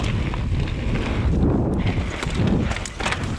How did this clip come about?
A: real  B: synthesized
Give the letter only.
A